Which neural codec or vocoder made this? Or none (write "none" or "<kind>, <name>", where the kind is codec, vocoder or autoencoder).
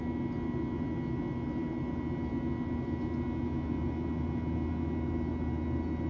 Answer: none